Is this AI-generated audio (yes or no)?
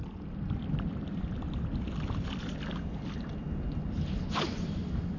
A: no